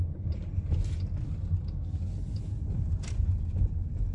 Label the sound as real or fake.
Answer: real